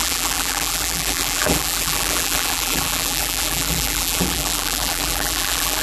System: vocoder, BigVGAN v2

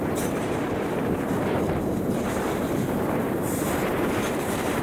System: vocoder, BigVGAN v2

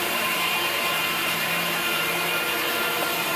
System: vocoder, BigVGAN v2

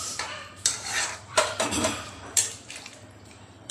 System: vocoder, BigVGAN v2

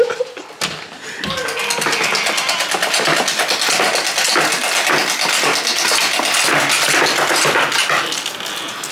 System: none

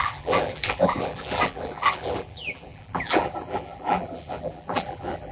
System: vocoder, BigVGAN v2